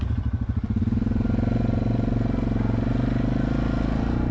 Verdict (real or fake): real